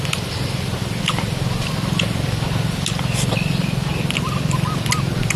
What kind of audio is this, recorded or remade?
recorded